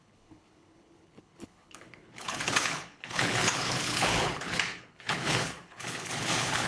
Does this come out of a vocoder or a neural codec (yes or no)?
yes